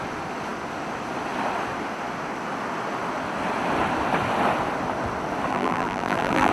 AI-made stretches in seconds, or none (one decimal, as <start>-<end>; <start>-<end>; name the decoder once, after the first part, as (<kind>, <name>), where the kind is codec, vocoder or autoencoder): 5.5-6.5 (vocoder, BigVGAN v2)